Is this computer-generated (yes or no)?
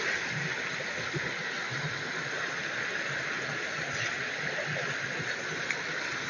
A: no